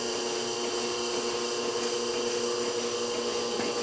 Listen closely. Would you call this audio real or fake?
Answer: real